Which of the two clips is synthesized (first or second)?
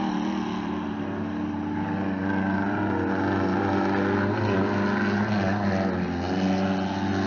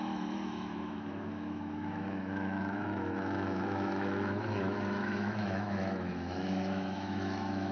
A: second